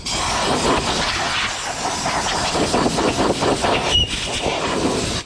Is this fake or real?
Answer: real